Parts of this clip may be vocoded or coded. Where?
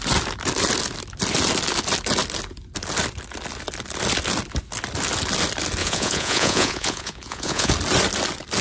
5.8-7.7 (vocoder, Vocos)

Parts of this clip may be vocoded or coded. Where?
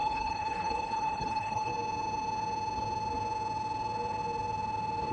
0.0-1.7 (codec, HILCodec)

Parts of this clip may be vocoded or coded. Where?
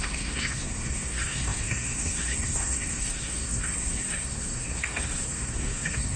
0.0-6.2 (codec, SNAC)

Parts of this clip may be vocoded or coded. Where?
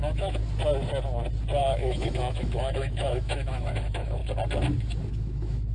0.0-0.4 (autoencoder, DAC-VAE); 1.6-4.2; 5.1-5.7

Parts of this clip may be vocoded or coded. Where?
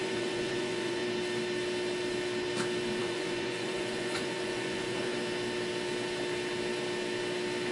0.0-1.0 (vocoder, Vocos); 3.0-5.1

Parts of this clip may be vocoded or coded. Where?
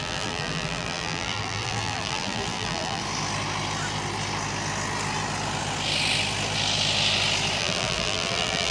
0.0-3.0 (vocoder, BigVGAN v2); 7.6-8.7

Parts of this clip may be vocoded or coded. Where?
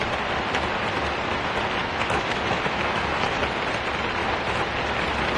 1.8-3.4 (autoencoder, DAC-VAE)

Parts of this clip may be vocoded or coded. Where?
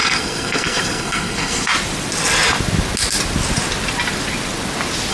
0.0-1.7 (codec, SNAC)